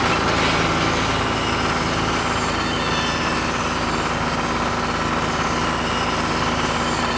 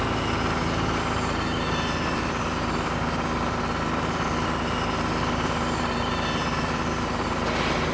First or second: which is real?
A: first